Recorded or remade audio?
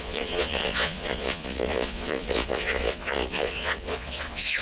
remade